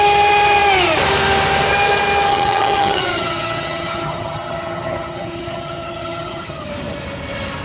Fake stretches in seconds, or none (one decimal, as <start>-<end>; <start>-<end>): 2.3-6.7